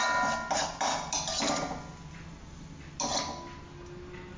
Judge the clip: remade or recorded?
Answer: recorded